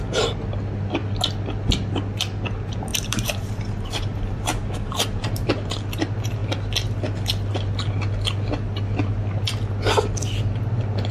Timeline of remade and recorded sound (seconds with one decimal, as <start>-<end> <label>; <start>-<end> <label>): 0.0-2.9 recorded; 2.9-5.7 remade; 5.7-11.1 recorded